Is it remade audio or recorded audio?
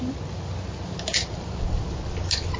recorded